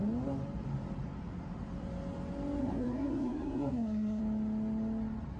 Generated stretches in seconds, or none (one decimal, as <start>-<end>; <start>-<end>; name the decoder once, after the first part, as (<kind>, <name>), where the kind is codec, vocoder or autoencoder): 2.6-4.2 (codec, SNAC)